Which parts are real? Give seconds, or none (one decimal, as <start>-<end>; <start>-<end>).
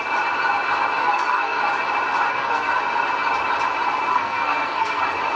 0.0-1.0; 1.6-2.3; 2.8-4.1; 5.0-5.4